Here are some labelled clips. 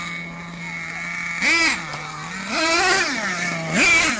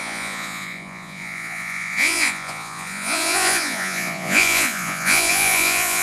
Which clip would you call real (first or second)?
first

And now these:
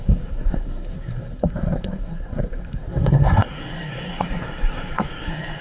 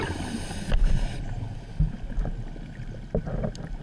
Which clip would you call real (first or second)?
second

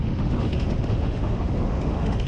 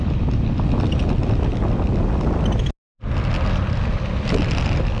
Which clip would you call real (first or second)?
second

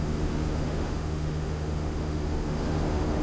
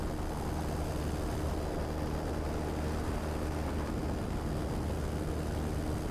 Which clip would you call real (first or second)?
second